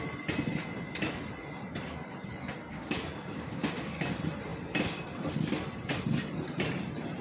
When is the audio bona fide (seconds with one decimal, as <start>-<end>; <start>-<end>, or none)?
0.0-2.7; 4.0-7.2